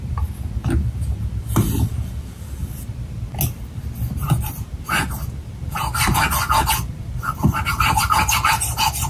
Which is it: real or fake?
real